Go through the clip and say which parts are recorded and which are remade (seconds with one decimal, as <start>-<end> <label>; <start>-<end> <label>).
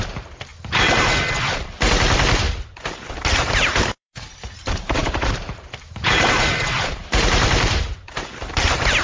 0.0-0.5 remade; 0.5-3.1 recorded; 3.1-9.0 remade